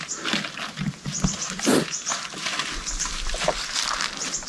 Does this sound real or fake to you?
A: real